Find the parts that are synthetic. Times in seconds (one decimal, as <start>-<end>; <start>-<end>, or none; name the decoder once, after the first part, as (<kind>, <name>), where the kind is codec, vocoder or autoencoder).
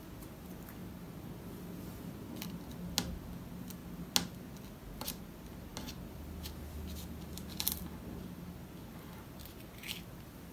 none